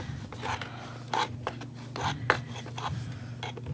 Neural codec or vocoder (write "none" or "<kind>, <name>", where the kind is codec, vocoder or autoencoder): none